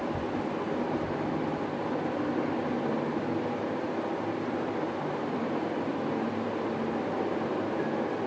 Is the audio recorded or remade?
recorded